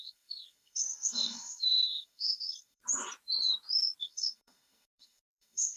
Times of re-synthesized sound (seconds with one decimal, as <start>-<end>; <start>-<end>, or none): 0.0-2.8; 4.0-5.8